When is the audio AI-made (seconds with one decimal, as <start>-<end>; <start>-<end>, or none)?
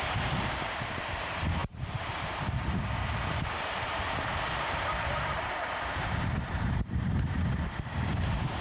0.0-8.6